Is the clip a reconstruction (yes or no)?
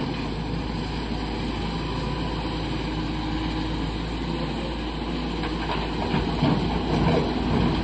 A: no